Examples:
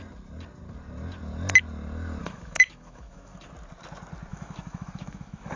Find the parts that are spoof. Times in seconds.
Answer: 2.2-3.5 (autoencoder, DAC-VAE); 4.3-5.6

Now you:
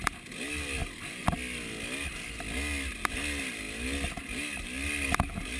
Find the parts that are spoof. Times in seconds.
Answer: none

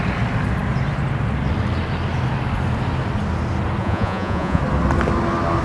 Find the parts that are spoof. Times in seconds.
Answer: 3.8-4.6 (vocoder, Vocos)

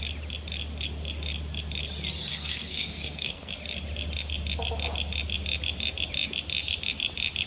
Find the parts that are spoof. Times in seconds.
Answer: 2.3-3.5 (codec, SNAC)

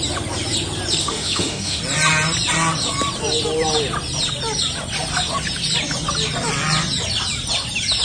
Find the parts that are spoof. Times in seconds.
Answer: 1.0-1.8 (autoencoder, DAC-VAE)